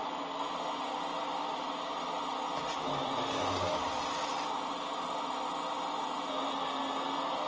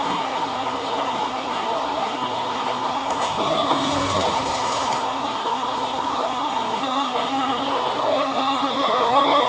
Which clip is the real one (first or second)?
first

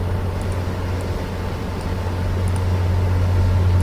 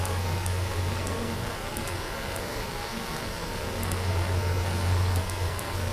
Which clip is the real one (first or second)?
first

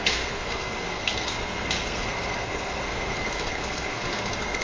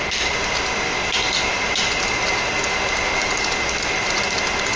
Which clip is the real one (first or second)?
second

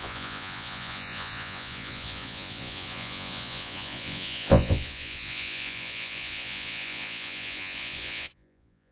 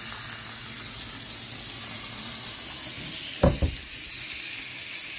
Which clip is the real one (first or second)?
second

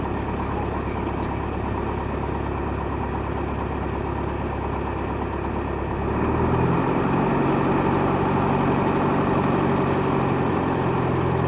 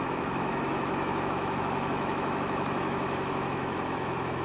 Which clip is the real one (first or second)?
first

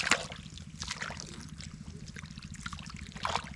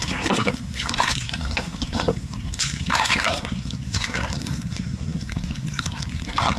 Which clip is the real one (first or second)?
first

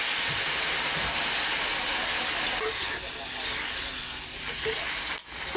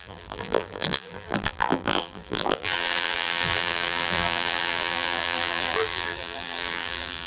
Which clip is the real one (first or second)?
first